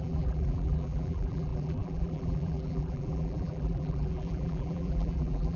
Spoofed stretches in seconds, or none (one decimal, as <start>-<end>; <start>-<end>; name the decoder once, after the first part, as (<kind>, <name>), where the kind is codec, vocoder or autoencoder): 0.0-5.6 (vocoder, BigVGAN v2)